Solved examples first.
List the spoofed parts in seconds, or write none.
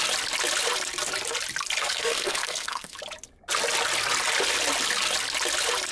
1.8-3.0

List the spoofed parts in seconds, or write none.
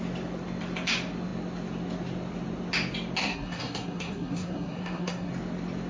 3.2-5.3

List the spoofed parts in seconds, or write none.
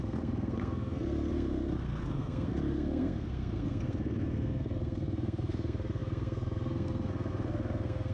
0.0-8.1